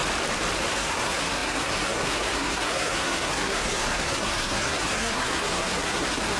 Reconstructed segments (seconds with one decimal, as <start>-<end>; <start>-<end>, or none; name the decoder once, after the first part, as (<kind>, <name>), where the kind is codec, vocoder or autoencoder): 0.7-6.4 (codec, SNAC)